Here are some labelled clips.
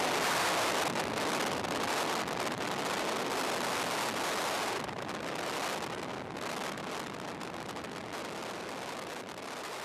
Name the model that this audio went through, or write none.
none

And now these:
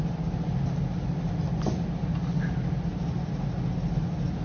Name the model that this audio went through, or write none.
none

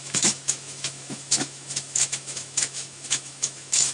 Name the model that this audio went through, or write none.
autoencoder, DAC-VAE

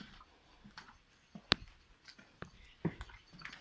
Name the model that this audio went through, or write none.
none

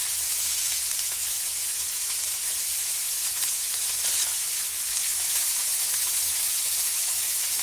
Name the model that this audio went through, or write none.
autoencoder, DAC-VAE